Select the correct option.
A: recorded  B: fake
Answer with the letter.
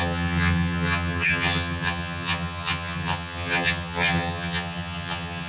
B